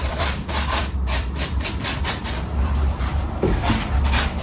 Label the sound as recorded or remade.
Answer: remade